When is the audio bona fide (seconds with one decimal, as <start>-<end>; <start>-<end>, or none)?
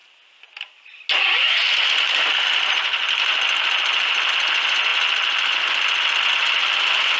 0.0-7.2